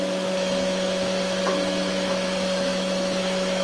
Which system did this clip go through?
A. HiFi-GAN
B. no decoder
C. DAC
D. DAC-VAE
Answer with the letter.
D